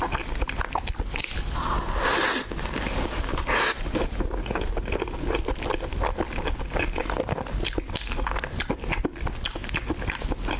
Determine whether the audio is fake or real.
real